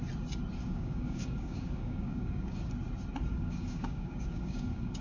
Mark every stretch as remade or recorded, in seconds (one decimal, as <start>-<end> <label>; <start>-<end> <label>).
0.0-0.6 recorded; 0.6-2.7 remade; 2.7-3.3 recorded; 3.3-5.0 remade